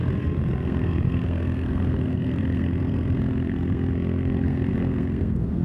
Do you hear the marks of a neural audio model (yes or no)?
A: yes